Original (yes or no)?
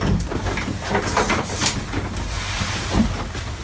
yes